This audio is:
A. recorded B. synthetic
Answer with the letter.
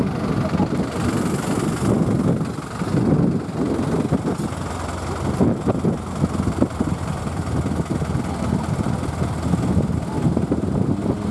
A